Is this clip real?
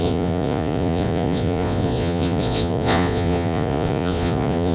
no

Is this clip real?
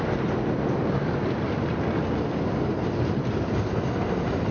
yes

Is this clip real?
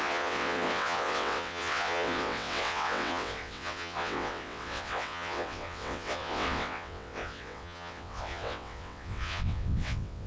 no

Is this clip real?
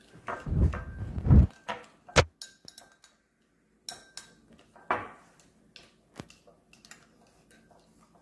yes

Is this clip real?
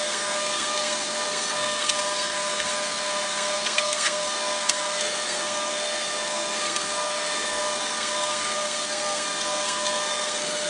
no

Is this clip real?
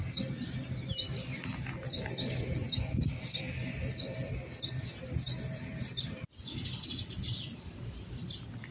yes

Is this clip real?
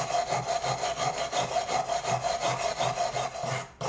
yes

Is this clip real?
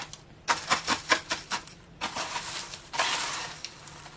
no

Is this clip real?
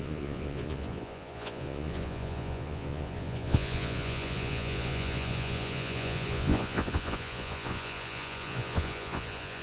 no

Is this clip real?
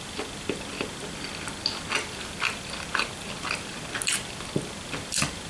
yes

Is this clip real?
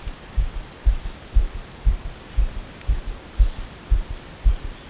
yes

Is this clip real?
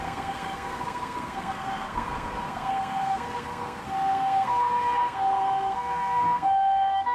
no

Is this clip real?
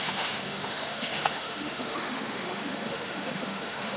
no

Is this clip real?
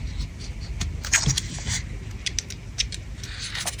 yes